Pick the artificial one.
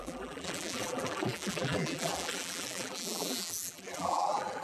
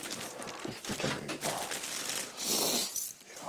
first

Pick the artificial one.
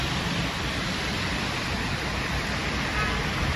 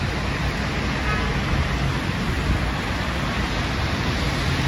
first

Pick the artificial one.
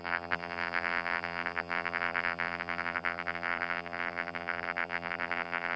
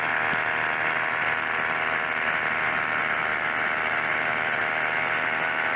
first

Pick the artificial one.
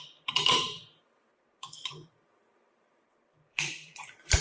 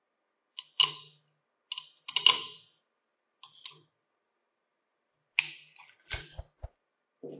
first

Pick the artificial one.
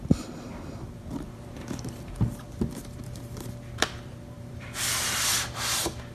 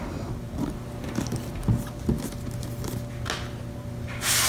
first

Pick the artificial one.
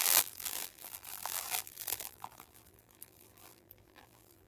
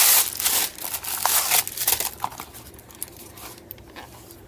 first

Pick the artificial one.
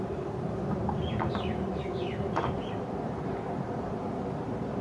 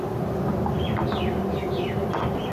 first